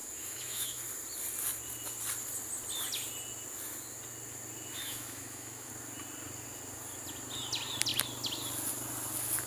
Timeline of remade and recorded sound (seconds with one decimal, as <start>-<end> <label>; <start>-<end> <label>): 0.0-0.8 remade; 0.8-4.8 recorded; 4.8-5.7 remade; 5.7-9.5 recorded